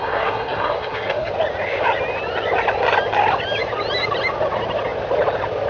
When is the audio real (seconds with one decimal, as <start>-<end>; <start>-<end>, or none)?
1.3-5.7